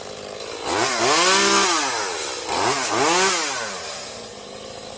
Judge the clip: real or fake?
real